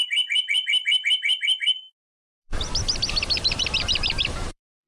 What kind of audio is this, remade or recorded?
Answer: remade